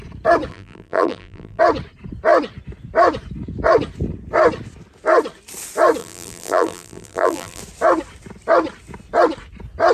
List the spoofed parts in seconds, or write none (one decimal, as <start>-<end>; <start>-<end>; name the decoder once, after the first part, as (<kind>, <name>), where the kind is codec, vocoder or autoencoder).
0.5-1.6 (vocoder, BigVGAN v2); 6.0-7.6